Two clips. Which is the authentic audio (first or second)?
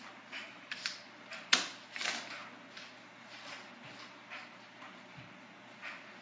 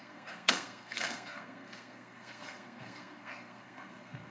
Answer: first